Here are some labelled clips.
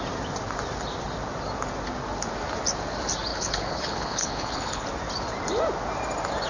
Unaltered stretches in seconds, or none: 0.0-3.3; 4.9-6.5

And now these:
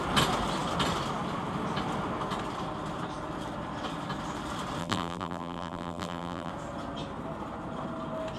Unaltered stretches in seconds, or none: 0.0-4.8; 6.5-8.4

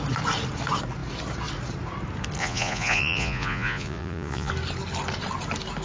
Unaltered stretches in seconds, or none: 0.0-2.4; 4.5-5.8

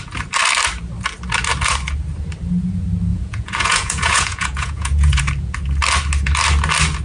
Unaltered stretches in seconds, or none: 0.0-3.1; 5.2-7.0

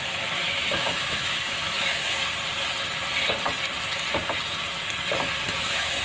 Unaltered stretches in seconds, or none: 2.0-5.6